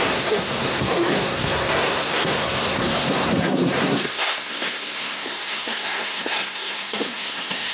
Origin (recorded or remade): remade